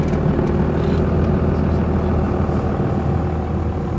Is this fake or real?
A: real